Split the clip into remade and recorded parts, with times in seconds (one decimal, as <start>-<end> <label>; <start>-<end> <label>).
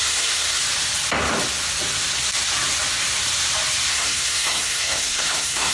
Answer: 0.0-0.6 remade; 0.6-3.9 recorded; 3.9-5.7 remade